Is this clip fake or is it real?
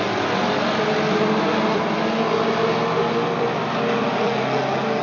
real